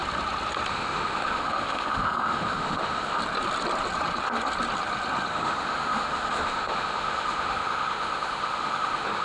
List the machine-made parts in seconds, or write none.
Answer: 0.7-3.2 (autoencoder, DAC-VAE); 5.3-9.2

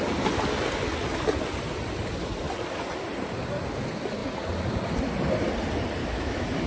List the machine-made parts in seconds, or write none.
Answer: 6.0-6.7 (autoencoder, DAC-VAE)

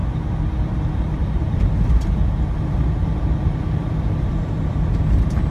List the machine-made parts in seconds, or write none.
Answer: none

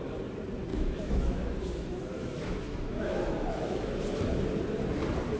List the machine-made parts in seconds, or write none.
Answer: 0.7-3.9 (autoencoder, DAC-VAE)

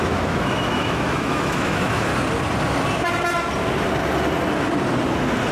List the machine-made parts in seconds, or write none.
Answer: 0.0-2.1 (autoencoder, DAC-VAE)

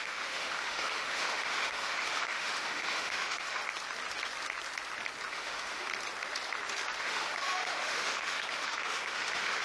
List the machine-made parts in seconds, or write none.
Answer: 0.0-3.6 (autoencoder, DAC-VAE); 5.3-5.9; 7.0-9.6